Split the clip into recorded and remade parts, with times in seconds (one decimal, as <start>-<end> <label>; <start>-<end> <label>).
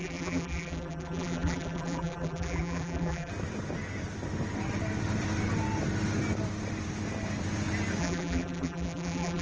0.0-3.3 remade; 3.3-8.0 recorded; 8.0-9.4 remade